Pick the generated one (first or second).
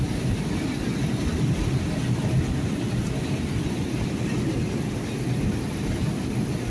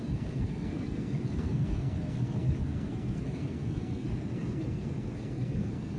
second